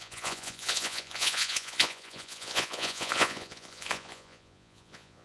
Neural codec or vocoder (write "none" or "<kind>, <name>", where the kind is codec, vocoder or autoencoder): vocoder, Vocos